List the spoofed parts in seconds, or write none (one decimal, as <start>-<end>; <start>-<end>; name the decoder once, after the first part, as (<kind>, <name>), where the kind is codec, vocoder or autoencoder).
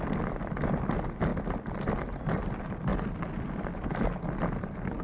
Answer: none